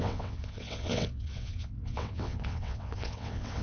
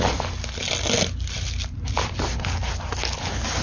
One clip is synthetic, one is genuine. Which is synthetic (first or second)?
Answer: first